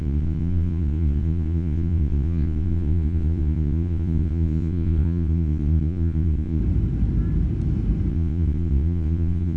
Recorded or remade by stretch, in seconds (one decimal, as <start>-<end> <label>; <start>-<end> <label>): 0.0-6.6 remade; 6.6-8.1 recorded; 8.1-9.6 remade